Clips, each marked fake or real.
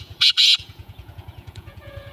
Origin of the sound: fake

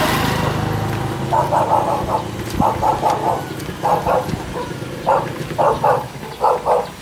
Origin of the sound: real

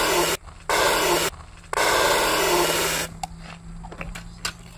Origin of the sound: real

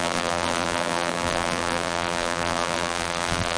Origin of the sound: fake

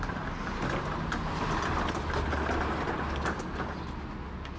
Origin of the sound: real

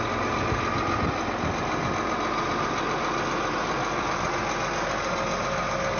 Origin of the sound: real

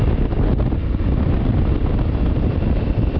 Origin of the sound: real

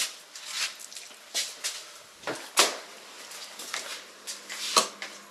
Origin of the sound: real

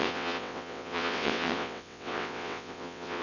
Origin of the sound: fake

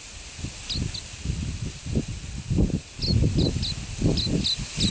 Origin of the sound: real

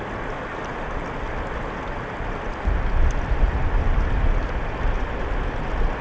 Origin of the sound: real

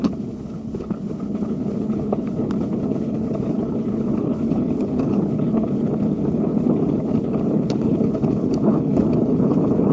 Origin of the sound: fake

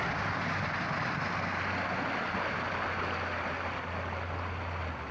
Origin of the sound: real